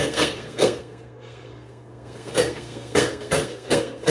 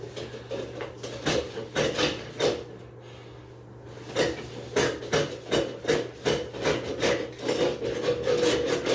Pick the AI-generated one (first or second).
first